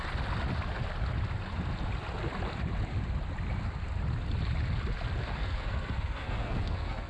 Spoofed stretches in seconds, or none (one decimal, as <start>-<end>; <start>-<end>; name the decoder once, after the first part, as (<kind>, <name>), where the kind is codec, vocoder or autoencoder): 5.2-7.1 (codec, SNAC)